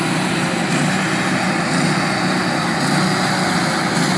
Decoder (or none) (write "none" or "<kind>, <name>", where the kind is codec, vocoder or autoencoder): none